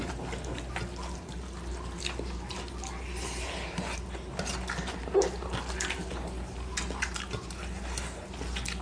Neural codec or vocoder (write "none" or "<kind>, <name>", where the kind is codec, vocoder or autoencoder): none